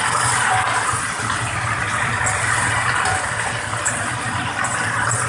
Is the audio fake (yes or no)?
no